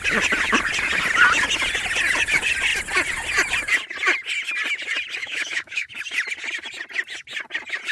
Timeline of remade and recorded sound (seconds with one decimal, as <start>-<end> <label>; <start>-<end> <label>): 0.0-5.2 recorded; 5.2-5.9 remade; 5.9-7.9 recorded